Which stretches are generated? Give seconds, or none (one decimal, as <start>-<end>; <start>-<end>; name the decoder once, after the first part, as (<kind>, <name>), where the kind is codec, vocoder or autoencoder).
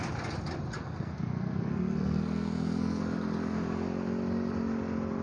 0.8-3.0 (codec, SNAC)